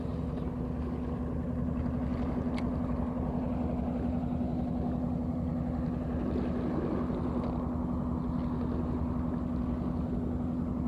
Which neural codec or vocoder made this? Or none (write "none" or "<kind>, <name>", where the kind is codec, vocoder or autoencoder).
none